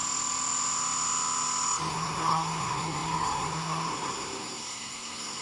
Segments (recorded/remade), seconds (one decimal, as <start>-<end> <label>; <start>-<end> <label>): 0.0-1.9 recorded; 1.9-5.4 remade